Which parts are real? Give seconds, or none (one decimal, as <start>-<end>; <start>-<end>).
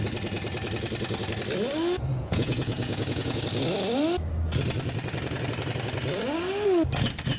0.0-2.1; 3.4-7.4